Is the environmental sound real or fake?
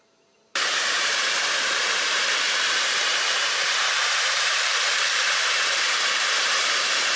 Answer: fake